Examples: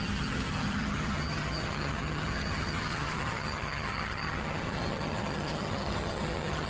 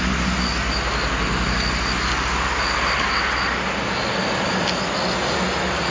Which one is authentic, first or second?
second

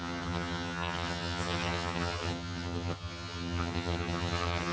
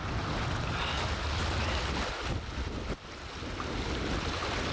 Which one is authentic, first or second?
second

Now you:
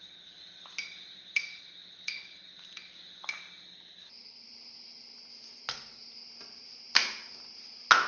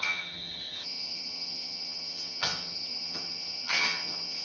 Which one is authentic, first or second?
first